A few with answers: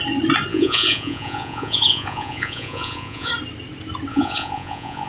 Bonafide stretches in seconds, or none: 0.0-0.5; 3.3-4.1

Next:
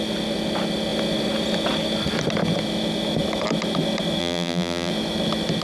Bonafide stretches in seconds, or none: 0.0-4.2; 4.9-5.6

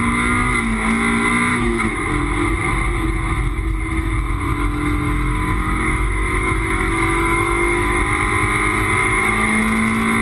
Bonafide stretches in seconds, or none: 0.0-1.5; 2.1-4.5; 8.0-9.0; 9.6-10.2